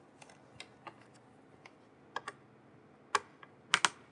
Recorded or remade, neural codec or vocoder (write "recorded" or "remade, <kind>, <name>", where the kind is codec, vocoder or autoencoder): recorded